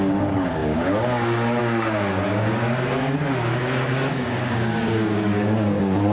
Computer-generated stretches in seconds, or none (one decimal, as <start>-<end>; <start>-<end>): 0.0-6.1

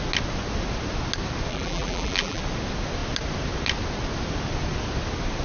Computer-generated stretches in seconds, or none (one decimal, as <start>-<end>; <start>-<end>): 1.5-2.4

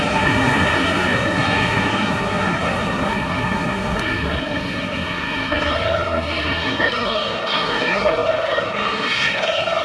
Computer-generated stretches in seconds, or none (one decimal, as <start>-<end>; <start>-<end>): 0.0-9.8

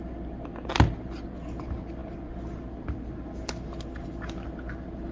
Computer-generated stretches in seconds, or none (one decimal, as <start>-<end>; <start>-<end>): none

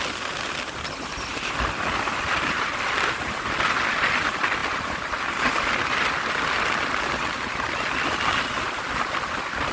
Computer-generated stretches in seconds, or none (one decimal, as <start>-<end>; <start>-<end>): none

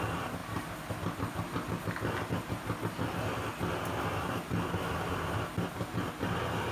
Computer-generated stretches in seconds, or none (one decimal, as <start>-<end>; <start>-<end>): none